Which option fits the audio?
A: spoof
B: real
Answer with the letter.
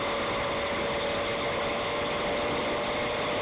B